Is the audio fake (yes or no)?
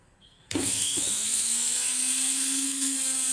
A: yes